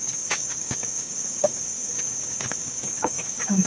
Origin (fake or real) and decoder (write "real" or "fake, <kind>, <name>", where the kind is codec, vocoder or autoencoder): fake, codec, DAC